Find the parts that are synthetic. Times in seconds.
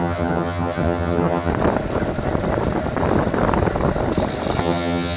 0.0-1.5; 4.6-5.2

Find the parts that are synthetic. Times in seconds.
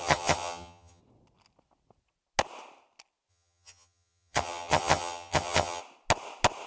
0.0-1.0; 3.3-5.8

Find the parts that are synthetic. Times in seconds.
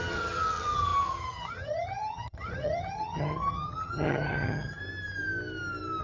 0.0-4.8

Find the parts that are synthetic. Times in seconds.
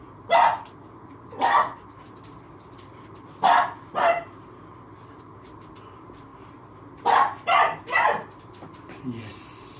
none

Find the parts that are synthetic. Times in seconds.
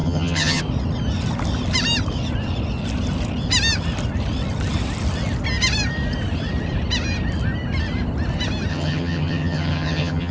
0.0-0.6; 8.7-10.3